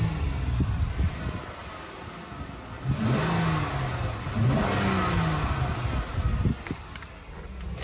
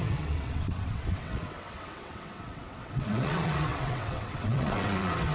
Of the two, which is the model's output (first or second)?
second